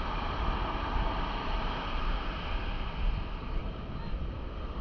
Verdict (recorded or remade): recorded